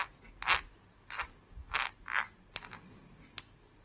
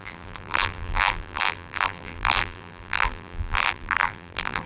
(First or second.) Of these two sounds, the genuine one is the first